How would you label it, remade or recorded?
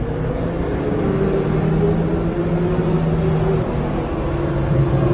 recorded